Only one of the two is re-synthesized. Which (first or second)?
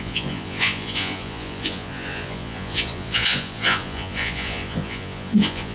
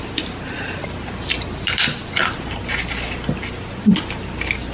first